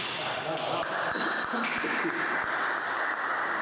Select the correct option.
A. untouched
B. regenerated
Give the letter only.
A